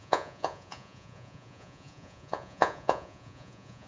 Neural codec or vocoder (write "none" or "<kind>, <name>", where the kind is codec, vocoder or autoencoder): vocoder, Vocos